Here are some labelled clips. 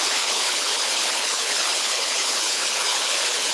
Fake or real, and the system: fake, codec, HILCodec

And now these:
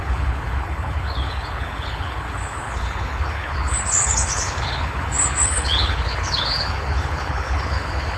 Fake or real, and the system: fake, codec, HILCodec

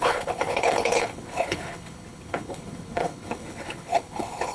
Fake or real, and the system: fake, codec, HILCodec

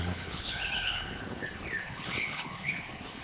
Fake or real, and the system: fake, codec, HILCodec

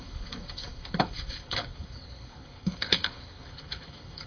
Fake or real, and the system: fake, codec, HILCodec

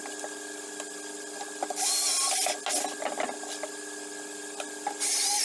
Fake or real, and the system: real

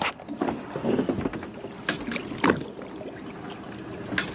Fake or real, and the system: real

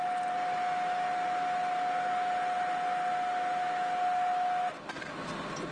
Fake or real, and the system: real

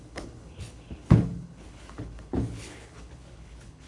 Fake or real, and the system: fake, codec, HILCodec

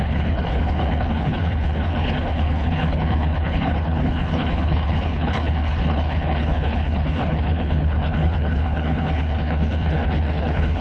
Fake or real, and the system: fake, codec, HILCodec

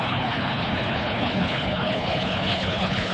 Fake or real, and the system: fake, codec, HILCodec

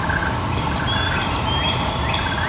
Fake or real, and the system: real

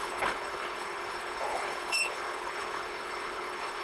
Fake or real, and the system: fake, codec, HILCodec